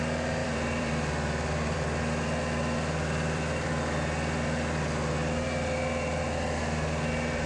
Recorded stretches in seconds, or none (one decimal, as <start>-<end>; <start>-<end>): 0.0-0.4; 3.7-7.5